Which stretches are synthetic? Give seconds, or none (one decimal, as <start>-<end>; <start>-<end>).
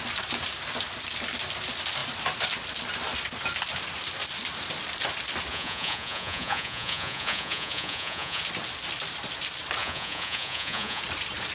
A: 5.5-8.4; 9.8-11.0